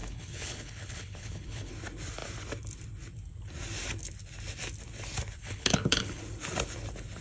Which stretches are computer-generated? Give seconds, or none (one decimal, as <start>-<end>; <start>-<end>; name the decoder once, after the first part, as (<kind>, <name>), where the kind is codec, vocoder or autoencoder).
0.0-1.7 (codec, HILCodec); 5.4-6.2